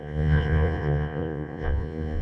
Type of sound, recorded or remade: remade